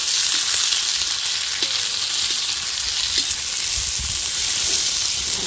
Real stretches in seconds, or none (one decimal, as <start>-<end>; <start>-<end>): 0.0-5.5